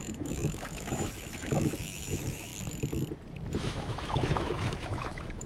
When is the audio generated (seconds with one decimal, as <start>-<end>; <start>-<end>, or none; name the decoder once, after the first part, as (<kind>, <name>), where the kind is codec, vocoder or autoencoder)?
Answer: 0.0-2.5 (autoencoder, DAC-VAE); 3.6-5.5